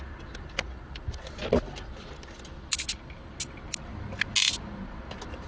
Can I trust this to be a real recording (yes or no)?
yes